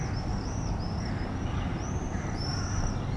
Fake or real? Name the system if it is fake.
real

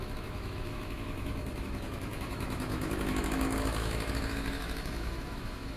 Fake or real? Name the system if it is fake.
fake, autoencoder, DAC-VAE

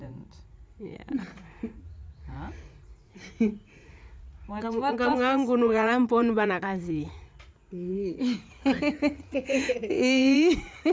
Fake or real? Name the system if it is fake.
fake, vocoder, Vocos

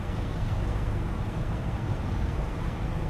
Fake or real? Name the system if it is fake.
fake, codec, SNAC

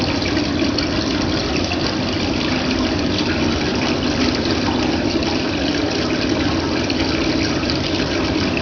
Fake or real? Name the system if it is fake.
real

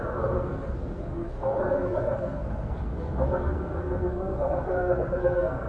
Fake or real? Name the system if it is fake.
fake, codec, SNAC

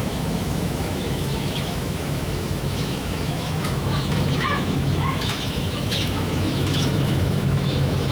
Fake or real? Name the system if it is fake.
fake, autoencoder, DAC-VAE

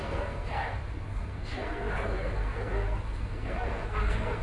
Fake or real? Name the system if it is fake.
fake, codec, SNAC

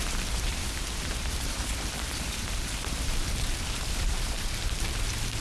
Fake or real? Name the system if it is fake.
fake, vocoder, BigVGAN v2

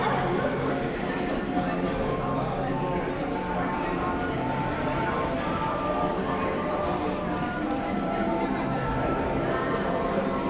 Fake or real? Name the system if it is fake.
fake, vocoder, BigVGAN v2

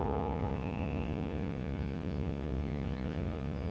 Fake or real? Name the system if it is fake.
fake, vocoder, Vocos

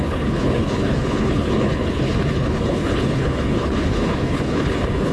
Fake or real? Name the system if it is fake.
fake, codec, HILCodec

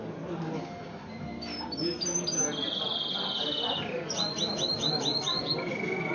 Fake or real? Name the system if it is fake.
real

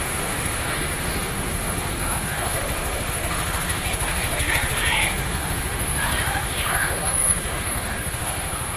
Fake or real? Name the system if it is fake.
fake, autoencoder, DAC-VAE